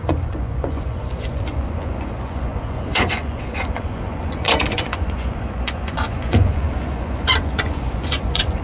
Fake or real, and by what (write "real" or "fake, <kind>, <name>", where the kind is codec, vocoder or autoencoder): fake, vocoder, Vocos